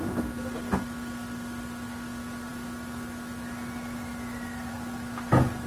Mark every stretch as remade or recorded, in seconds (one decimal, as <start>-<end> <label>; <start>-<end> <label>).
0.0-5.7 recorded

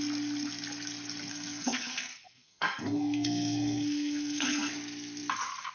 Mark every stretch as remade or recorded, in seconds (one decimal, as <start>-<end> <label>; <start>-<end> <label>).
0.0-1.3 recorded; 1.3-4.7 remade; 4.7-5.7 recorded

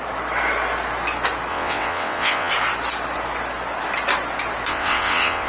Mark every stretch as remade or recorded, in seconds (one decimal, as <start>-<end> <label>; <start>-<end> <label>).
0.0-1.5 recorded; 1.5-2.5 remade; 2.5-4.7 recorded; 4.7-5.5 remade

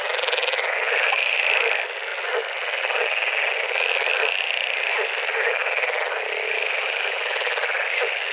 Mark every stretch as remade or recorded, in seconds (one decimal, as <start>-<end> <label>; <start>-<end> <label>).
0.0-8.3 recorded

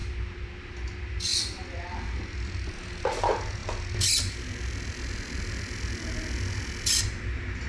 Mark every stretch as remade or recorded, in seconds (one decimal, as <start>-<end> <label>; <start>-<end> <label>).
0.0-7.7 recorded

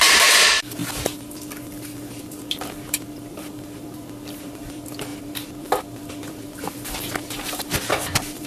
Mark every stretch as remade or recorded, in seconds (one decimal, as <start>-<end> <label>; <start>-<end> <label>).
0.0-0.8 remade; 0.8-2.1 recorded; 2.1-8.5 remade

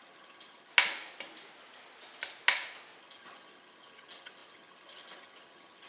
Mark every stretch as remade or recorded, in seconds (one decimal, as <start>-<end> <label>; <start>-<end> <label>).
0.0-0.7 remade; 0.7-3.0 recorded; 3.0-5.9 remade